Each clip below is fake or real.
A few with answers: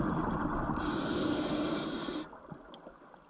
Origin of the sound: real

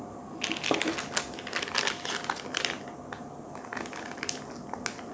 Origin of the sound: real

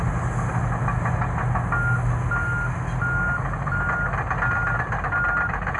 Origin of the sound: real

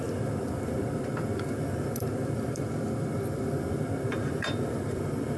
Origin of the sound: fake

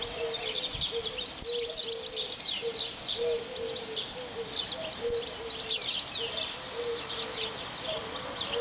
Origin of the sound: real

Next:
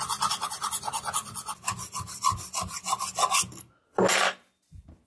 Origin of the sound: real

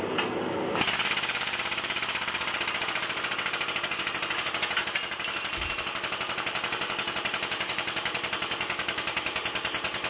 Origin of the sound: real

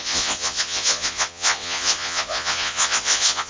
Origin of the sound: fake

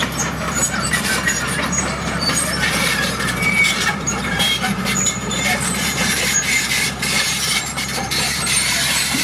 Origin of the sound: fake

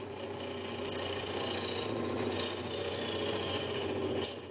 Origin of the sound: fake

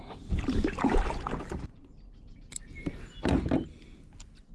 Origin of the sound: real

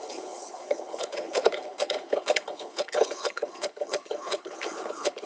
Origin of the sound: fake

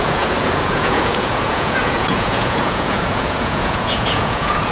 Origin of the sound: fake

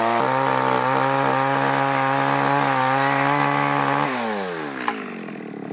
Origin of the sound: real